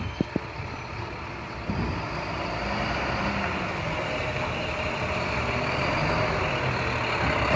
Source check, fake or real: real